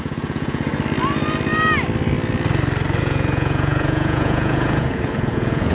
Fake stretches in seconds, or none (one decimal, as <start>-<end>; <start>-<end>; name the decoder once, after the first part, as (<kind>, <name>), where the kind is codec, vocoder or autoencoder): 0.0-0.7 (vocoder, Vocos); 3.0-5.7